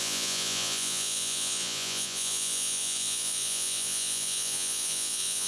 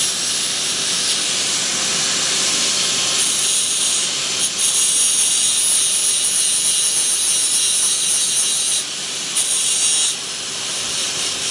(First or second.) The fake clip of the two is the first